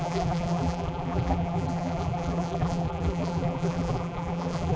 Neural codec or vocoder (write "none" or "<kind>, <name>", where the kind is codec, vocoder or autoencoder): vocoder, BigVGAN v2